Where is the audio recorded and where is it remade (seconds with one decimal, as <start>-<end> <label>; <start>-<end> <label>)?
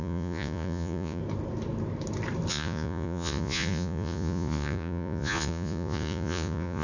0.0-1.2 remade; 1.2-2.5 recorded; 2.5-6.8 remade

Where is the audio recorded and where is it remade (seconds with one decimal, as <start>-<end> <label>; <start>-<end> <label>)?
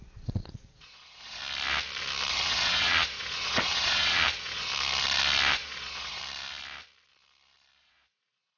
0.0-1.4 remade; 1.4-2.3 recorded; 2.3-4.7 remade; 4.7-5.5 recorded; 5.5-6.2 remade; 6.2-7.8 recorded; 7.8-8.6 remade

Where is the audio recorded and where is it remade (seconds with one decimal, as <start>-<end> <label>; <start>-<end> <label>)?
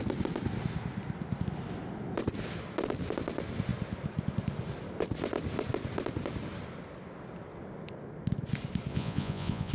0.0-8.9 recorded; 8.9-9.7 remade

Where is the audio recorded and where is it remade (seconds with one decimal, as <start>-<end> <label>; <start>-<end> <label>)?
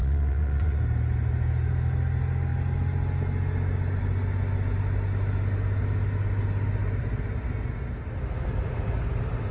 0.0-0.8 remade; 0.8-9.5 recorded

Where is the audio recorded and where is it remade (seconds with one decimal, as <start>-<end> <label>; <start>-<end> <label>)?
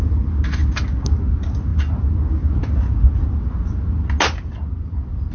0.0-5.3 recorded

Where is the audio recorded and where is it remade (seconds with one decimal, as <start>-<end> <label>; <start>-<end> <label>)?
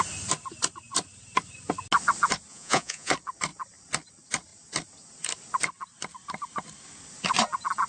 0.0-2.5 recorded; 2.5-3.1 remade; 3.1-7.9 recorded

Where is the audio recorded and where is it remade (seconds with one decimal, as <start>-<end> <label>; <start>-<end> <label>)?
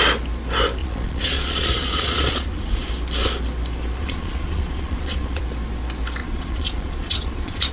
0.0-0.8 recorded; 0.8-2.9 remade; 2.9-4.0 recorded; 4.0-5.4 remade; 5.4-6.2 recorded; 6.2-7.7 remade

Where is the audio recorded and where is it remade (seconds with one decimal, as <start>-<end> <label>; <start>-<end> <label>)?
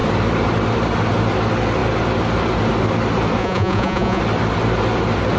0.0-3.4 recorded; 3.4-4.2 remade; 4.2-5.4 recorded